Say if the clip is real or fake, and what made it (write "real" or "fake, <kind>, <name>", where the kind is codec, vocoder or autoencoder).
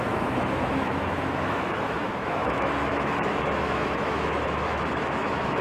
fake, autoencoder, DAC-VAE